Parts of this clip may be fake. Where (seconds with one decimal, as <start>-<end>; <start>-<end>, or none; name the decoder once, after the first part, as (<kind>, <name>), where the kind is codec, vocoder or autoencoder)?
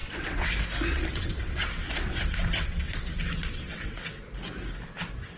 0.0-0.5 (vocoder, WaveNeXt); 0.9-4.1